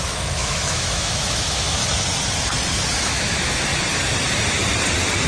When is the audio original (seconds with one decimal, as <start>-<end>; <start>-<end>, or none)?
1.8-3.0; 3.7-5.3